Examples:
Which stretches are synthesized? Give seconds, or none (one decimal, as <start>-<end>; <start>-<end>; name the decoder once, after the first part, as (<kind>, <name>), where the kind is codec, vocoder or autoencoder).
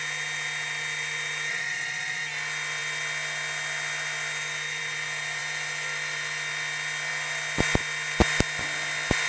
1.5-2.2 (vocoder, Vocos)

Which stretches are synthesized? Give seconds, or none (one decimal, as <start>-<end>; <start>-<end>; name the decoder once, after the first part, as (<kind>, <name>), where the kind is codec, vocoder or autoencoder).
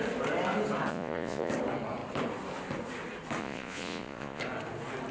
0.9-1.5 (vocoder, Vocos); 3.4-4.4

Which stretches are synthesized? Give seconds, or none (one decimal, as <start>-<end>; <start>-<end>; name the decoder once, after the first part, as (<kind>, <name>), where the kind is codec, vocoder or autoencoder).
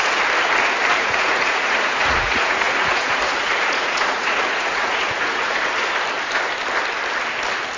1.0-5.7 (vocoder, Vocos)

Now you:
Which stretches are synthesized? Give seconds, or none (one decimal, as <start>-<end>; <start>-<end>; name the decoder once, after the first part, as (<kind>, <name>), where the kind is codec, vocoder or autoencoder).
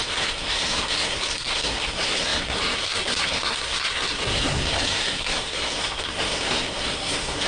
0.0-7.5 (codec, SNAC)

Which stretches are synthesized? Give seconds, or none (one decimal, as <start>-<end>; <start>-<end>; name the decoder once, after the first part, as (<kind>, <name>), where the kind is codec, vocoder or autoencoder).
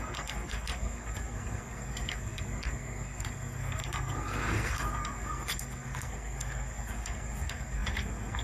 0.0-8.4 (codec, SNAC)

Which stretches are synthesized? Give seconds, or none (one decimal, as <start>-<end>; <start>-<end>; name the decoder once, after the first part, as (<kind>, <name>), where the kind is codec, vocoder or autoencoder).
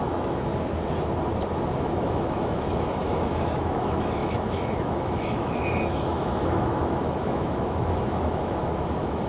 0.0-0.5 (autoencoder, DAC-VAE); 1.8-9.3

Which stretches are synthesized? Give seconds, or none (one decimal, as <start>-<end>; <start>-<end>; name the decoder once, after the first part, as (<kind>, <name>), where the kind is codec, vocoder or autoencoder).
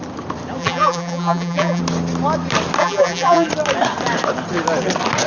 0.6-1.8 (vocoder, BigVGAN v2); 2.8-3.5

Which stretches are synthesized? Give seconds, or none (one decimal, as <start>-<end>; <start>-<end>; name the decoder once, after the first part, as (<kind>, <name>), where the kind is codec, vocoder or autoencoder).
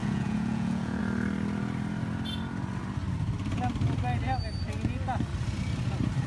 0.0-1.0 (vocoder, Vocos)